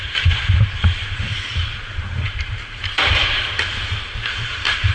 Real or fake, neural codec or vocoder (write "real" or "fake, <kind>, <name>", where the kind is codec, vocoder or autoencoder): fake, vocoder, BigVGAN v2